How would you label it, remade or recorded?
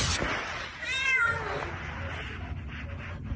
recorded